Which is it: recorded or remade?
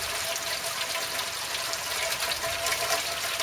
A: recorded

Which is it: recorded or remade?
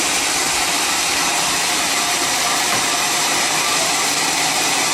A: remade